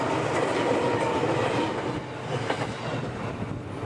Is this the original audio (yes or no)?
yes